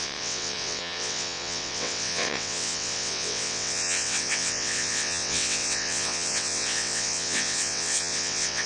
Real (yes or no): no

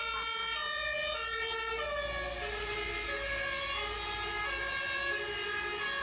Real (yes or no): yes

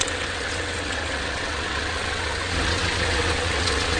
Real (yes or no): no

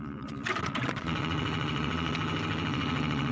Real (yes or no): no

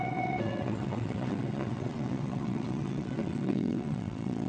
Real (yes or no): no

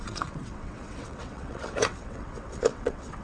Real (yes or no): no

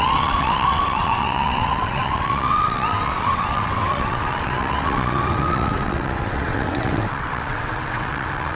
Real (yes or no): no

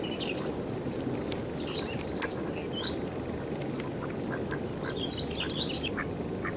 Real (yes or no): yes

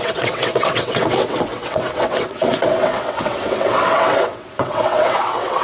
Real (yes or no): no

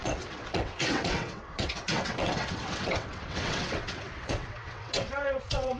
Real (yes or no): no